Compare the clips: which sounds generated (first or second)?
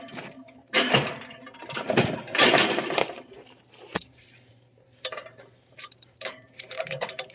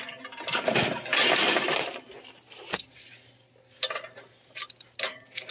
first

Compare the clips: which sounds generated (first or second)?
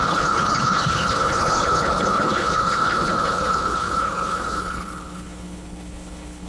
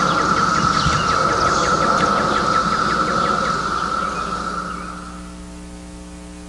first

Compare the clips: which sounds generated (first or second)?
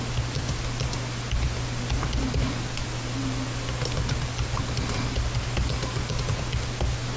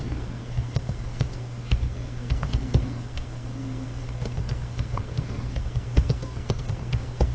second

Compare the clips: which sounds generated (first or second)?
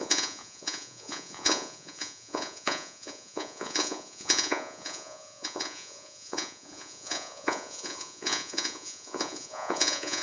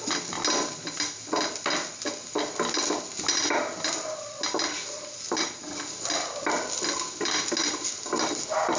first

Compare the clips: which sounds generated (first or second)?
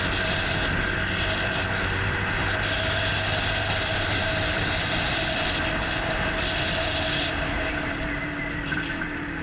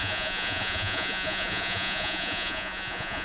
second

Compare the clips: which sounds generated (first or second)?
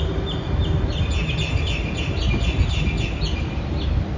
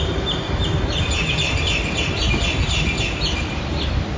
second